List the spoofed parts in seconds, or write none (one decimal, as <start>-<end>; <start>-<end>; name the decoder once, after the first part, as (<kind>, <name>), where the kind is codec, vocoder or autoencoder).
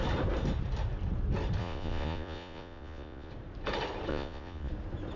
1.6-3.3 (vocoder, Vocos); 4.1-4.7